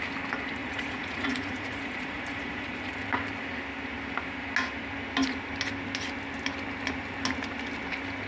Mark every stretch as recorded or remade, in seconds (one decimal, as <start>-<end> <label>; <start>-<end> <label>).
0.0-0.6 recorded; 0.6-2.9 remade; 2.9-8.3 recorded